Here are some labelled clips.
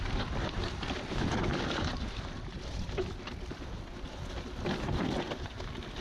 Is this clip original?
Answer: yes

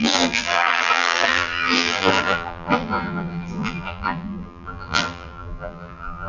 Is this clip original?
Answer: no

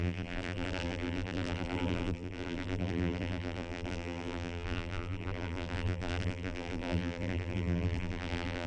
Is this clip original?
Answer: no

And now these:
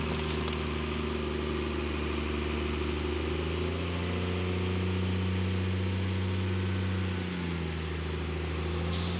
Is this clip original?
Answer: yes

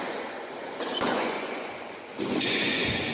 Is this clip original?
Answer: no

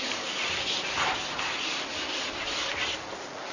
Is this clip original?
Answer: yes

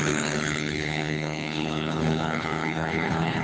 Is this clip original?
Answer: no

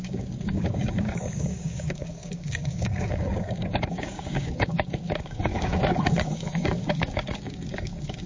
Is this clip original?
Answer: no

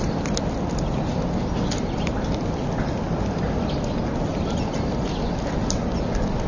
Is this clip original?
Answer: yes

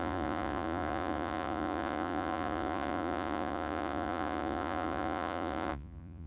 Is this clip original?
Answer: no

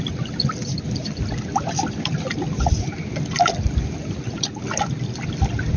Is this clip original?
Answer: yes